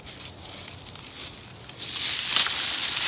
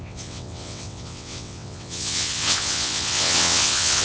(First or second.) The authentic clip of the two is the first